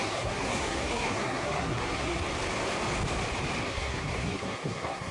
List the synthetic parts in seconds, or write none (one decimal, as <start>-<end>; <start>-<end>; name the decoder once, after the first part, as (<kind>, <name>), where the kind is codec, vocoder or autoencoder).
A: 0.0-2.2 (codec, SNAC); 3.7-5.1